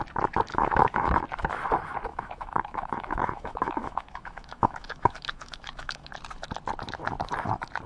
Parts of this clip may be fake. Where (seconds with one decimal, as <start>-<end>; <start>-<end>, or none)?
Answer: 0.5-1.1; 2.1-6.1

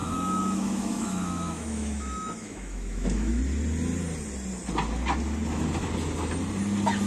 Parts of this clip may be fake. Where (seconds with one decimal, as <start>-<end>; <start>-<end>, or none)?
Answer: 0.0-3.4